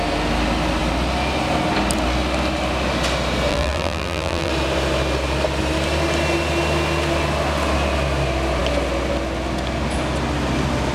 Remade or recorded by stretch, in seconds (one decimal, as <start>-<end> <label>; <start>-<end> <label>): 0.0-3.5 recorded; 3.5-4.5 remade; 4.5-10.9 recorded